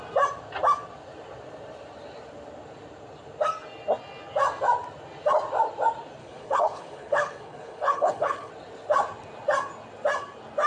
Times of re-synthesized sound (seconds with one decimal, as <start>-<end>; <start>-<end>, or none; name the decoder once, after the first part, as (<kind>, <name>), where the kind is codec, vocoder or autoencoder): 6.2-8.5 (codec, HILCodec)